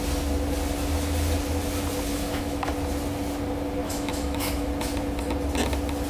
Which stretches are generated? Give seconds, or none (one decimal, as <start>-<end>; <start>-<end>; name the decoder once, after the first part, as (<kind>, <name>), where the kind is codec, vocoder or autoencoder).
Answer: 2.1-2.7 (autoencoder, DAC-VAE); 3.8-4.7